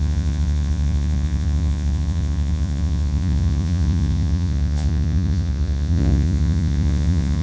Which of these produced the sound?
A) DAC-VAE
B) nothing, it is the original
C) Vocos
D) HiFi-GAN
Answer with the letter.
C